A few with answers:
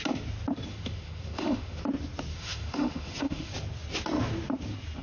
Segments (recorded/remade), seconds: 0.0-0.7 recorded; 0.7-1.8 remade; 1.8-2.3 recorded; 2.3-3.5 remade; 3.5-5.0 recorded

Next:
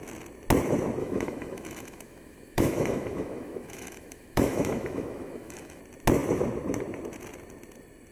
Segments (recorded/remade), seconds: 0.0-1.0 recorded; 1.0-5.8 remade; 5.8-8.1 recorded

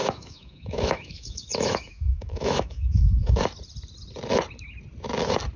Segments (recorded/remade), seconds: 0.0-3.4 remade; 3.4-5.6 recorded

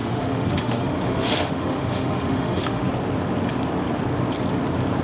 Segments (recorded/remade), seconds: 0.0-2.9 remade; 2.9-5.0 recorded

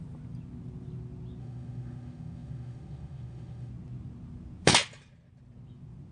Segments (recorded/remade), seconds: 0.0-1.4 recorded; 1.4-3.7 remade; 3.7-6.1 recorded

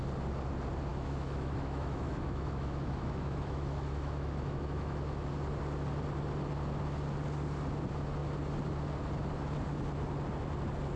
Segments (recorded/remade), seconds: 0.0-0.9 recorded; 0.9-5.3 remade; 5.3-11.0 recorded